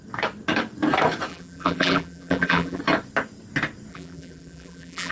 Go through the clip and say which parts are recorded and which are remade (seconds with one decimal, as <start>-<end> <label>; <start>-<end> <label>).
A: 0.0-1.3 recorded; 1.3-2.8 remade; 2.8-3.9 recorded; 3.9-5.1 remade